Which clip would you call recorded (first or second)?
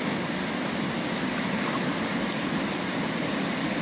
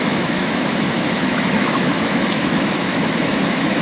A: first